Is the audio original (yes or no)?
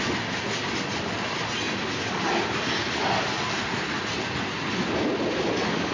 yes